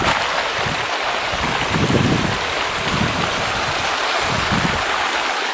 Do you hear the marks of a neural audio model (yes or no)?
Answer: no